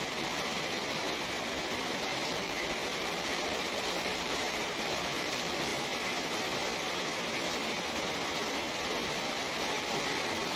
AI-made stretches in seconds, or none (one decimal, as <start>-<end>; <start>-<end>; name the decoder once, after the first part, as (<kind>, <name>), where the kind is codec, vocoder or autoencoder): 0.0-1.0 (vocoder, BigVGAN v2); 1.8-5.7; 9.1-10.6